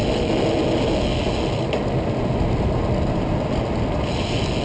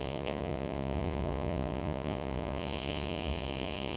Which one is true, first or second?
first